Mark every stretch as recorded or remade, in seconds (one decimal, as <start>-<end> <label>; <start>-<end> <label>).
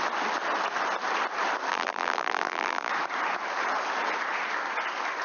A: 0.0-1.7 recorded; 1.7-2.9 remade; 2.9-5.2 recorded